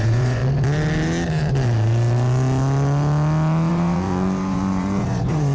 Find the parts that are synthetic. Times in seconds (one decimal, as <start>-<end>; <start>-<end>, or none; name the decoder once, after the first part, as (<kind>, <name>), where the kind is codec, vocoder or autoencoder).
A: 0.0-0.4 (vocoder, Vocos); 3.7-5.5